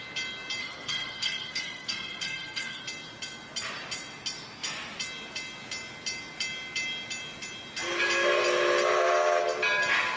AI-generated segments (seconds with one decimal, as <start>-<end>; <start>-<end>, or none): 0.6-2.8